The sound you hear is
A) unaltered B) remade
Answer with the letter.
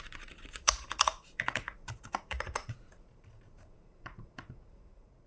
B